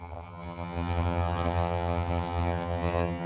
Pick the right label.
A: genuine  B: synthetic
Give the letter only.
B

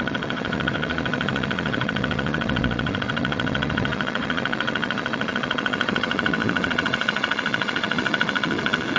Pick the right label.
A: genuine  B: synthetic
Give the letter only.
B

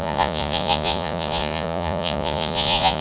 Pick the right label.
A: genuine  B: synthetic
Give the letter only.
B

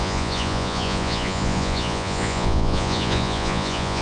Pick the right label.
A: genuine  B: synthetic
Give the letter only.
B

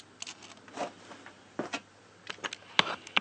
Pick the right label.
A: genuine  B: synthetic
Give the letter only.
A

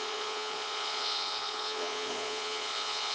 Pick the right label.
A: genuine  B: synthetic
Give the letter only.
B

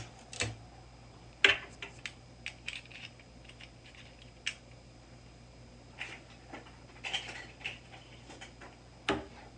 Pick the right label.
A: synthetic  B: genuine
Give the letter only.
B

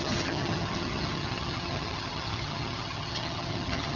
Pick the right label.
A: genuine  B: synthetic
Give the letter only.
B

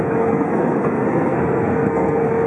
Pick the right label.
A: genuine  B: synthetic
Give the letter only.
B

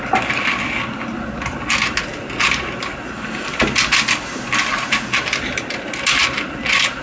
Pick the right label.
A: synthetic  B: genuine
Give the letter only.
B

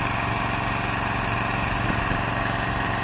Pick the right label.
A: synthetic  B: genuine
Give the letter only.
B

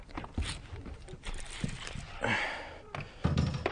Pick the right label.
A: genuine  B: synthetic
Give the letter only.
A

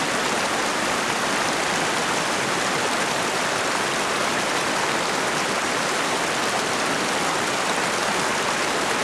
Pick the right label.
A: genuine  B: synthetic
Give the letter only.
A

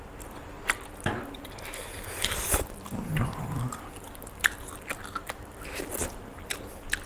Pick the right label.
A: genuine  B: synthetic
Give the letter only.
B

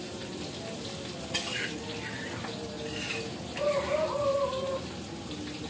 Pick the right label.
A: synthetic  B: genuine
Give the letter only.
B